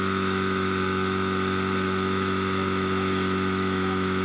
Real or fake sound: fake